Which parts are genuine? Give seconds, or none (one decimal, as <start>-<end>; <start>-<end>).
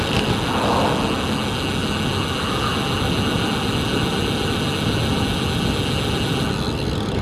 0.0-7.2